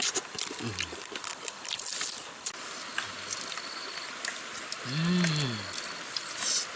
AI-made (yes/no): no